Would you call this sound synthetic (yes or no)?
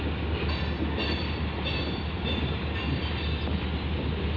no